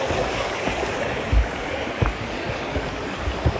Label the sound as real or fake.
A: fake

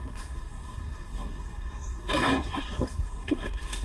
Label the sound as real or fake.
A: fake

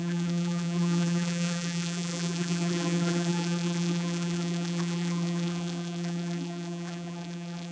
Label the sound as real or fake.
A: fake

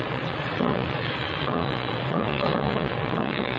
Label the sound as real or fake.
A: fake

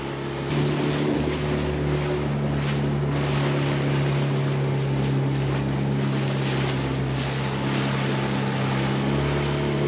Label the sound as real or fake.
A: real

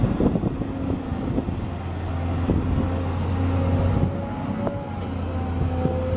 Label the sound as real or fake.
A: real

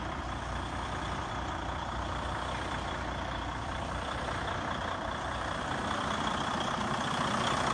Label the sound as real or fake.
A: fake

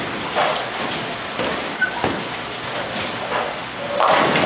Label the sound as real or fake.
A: real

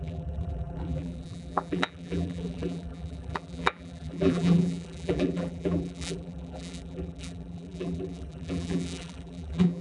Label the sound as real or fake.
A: fake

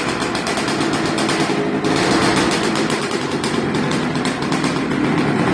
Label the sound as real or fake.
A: real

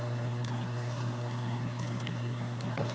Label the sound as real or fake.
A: fake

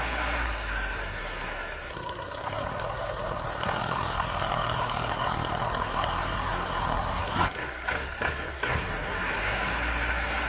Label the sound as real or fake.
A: fake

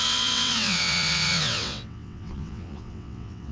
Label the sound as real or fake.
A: fake